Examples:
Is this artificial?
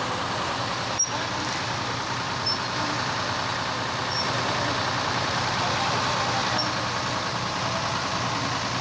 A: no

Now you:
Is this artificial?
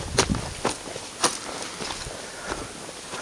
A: no